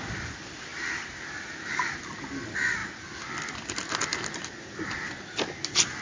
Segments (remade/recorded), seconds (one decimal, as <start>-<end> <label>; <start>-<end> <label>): 0.0-6.0 recorded